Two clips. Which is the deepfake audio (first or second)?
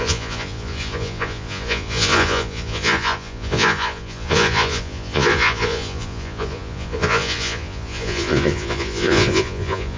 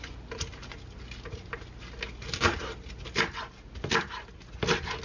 first